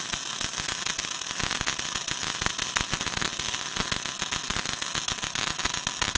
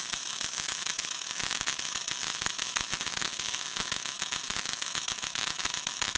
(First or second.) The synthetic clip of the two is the second